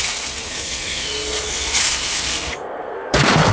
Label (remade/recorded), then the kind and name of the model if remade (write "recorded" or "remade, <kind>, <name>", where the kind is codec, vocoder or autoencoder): remade, codec, SNAC